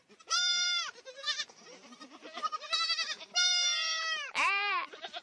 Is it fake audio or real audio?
fake